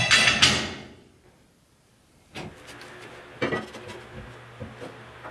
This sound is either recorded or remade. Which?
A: recorded